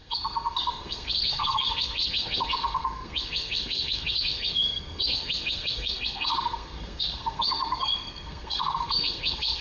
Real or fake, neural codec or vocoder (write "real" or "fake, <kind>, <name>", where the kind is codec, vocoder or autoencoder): fake, codec, SNAC